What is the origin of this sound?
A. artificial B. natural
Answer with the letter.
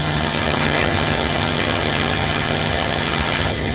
A